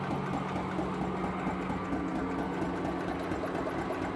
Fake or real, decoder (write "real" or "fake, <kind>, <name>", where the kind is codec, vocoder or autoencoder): real